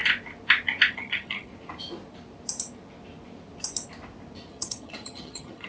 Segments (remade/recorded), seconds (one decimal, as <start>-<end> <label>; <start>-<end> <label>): 0.0-0.9 recorded; 0.9-1.5 remade; 1.5-4.5 recorded; 4.5-5.7 remade